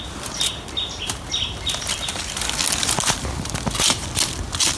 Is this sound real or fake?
real